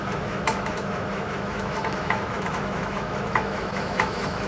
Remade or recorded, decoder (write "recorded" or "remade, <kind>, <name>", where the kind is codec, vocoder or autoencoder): remade, autoencoder, DAC-VAE